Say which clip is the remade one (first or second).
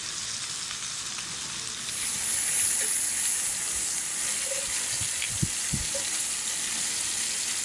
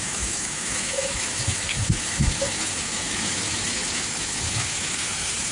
second